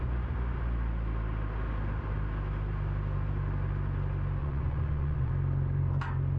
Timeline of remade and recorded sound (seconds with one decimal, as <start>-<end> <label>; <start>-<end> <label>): 0.0-4.4 recorded; 4.4-5.3 remade; 5.3-6.4 recorded